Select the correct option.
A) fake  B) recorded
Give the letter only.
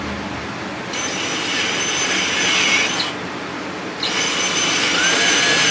B